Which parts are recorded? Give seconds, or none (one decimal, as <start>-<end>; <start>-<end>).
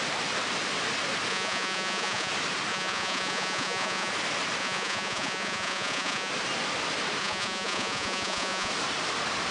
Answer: 0.0-1.3; 2.3-2.7; 4.1-4.6; 6.3-7.2; 8.7-9.5